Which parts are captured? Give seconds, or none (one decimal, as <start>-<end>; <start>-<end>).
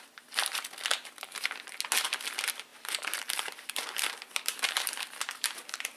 0.0-0.9; 1.5-2.7